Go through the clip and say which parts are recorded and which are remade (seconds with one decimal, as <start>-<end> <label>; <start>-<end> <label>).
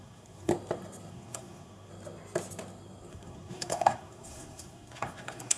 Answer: 0.0-0.5 remade; 0.5-1.1 recorded; 1.1-1.9 remade; 1.9-3.1 recorded; 3.1-5.6 remade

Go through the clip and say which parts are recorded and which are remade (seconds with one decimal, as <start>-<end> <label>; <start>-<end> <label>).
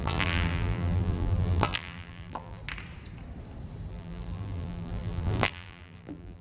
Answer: 0.0-2.6 remade; 2.6-3.9 recorded; 3.9-6.4 remade